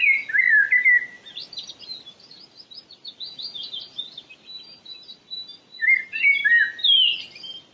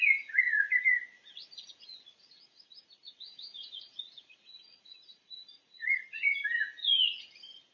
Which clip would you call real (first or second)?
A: first